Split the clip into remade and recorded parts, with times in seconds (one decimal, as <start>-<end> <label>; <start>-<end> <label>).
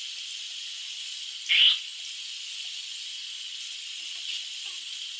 0.0-5.2 recorded